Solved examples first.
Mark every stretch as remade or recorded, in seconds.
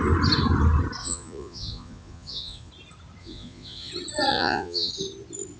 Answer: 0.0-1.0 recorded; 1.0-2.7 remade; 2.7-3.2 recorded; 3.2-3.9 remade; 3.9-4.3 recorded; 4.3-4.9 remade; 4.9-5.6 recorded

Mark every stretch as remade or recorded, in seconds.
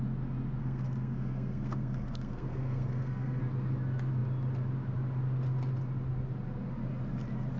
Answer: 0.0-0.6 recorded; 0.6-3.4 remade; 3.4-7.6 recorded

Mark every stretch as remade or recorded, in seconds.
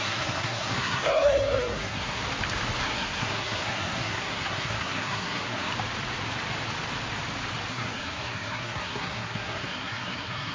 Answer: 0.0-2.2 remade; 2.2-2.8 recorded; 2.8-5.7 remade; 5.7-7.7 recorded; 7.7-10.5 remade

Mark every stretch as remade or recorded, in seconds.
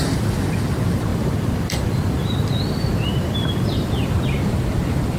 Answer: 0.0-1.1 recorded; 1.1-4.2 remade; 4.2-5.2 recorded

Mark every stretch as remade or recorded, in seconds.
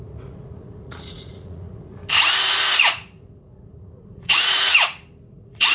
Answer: 0.0-2.0 remade; 2.0-2.5 recorded; 2.5-4.7 remade; 4.7-5.3 recorded; 5.3-5.7 remade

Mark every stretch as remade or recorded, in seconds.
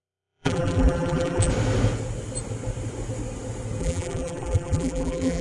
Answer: 0.0-1.5 remade; 1.5-3.8 recorded; 3.8-5.4 remade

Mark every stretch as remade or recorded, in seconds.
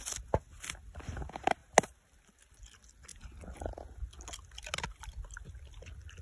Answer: 0.0-6.2 recorded